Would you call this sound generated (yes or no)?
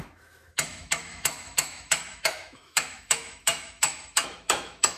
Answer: yes